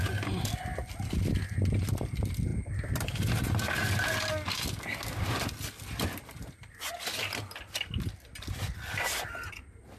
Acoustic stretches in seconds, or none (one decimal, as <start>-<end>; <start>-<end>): 0.0-10.0

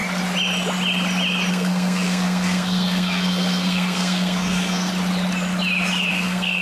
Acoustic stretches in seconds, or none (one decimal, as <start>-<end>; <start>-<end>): 0.0-1.5; 4.9-6.1

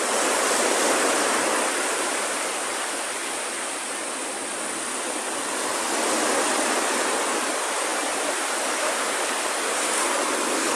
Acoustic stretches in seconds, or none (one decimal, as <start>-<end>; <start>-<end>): 0.0-10.8

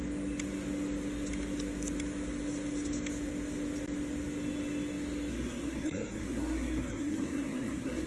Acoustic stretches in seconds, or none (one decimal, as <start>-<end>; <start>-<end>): 0.0-5.3

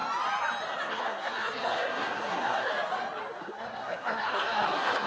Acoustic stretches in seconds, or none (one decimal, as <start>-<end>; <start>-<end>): 0.0-0.9; 2.7-3.4